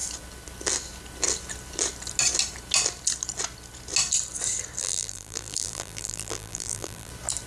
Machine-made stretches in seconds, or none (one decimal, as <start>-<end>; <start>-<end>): 4.8-7.1